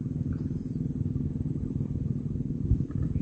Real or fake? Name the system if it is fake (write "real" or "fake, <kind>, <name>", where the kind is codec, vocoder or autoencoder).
real